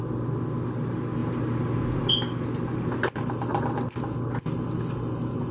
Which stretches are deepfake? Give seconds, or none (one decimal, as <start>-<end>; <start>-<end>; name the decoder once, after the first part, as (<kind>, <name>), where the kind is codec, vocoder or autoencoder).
none